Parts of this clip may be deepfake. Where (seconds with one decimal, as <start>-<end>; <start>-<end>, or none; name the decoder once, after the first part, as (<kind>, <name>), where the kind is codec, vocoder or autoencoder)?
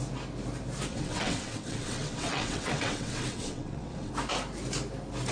0.9-4.1 (vocoder, WaveNeXt)